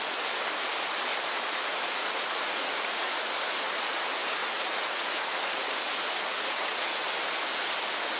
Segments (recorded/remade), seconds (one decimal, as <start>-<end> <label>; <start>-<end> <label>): 0.0-1.1 recorded; 1.1-4.0 remade; 4.0-4.4 recorded; 4.4-7.0 remade; 7.0-8.2 recorded